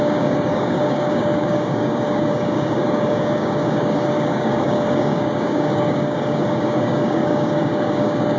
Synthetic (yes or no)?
yes